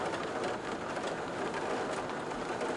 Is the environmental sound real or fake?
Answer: real